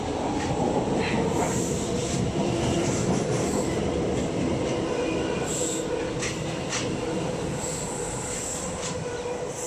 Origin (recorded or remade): recorded